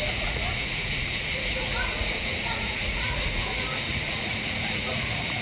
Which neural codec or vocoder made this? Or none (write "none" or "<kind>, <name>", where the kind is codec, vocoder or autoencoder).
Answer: vocoder, Vocos